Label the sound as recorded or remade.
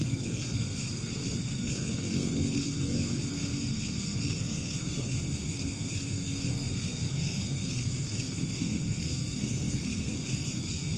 remade